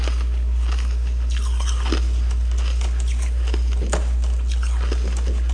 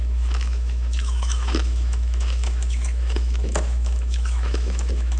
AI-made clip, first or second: second